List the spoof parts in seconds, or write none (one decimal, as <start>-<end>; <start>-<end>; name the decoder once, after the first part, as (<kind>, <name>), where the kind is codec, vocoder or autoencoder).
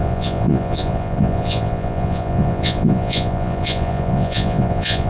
0.0-5.1 (vocoder, Vocos)